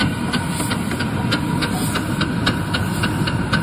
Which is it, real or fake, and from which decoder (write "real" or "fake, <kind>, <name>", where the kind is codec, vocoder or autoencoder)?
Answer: real